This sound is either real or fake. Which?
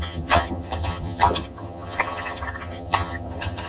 fake